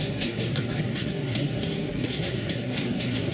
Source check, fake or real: fake